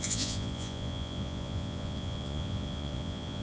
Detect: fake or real fake